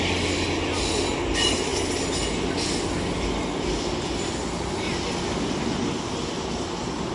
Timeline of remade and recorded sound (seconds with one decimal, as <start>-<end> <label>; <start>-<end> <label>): 0.0-7.1 recorded